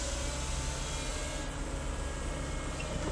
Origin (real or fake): real